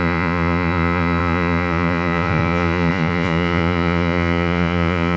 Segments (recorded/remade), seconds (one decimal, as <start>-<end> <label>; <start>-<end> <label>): 0.0-5.2 remade